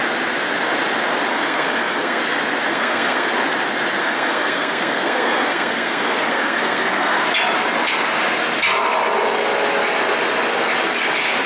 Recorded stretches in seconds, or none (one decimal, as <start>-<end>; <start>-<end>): 0.0-1.3; 2.2-2.7; 3.3-4.0; 7.2-11.5